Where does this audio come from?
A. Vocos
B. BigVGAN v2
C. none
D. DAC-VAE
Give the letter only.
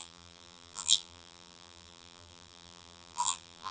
B